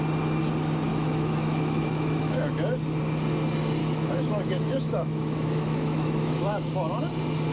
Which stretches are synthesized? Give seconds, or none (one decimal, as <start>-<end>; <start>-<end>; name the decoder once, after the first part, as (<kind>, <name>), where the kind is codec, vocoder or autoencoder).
0.9-2.5 (autoencoder, DAC-VAE); 3.8-6.9